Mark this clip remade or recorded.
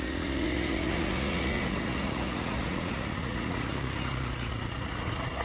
remade